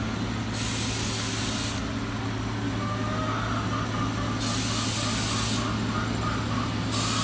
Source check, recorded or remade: recorded